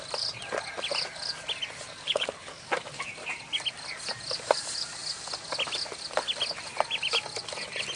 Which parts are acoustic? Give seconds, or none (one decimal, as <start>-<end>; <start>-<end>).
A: 0.0-2.0; 2.5-8.0